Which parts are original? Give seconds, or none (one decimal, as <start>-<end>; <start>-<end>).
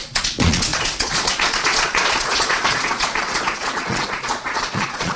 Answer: none